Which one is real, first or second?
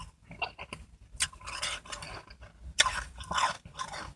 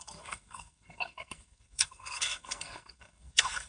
first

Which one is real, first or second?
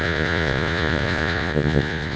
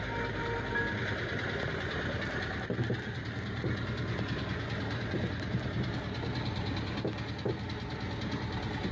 second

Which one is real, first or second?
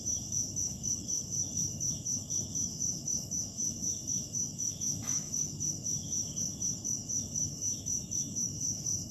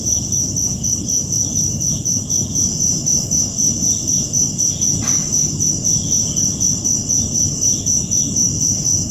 second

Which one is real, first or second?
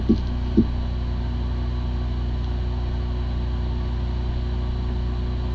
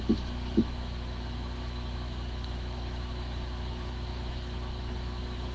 first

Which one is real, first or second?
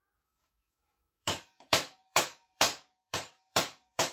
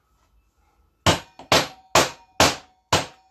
second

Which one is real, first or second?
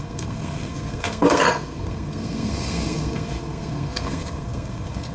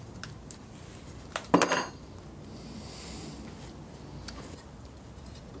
second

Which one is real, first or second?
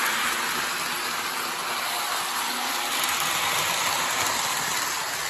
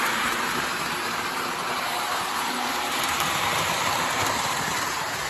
first